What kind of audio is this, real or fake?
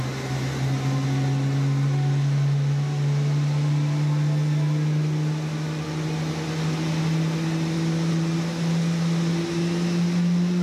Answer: real